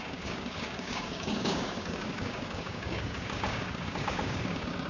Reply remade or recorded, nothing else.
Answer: remade